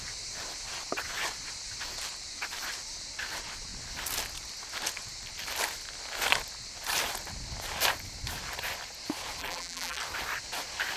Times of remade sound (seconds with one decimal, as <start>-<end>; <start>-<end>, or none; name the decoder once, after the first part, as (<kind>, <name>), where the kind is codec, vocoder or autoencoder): 9.4-10.0 (vocoder, BigVGAN v2)